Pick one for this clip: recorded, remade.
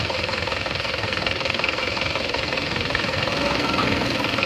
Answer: remade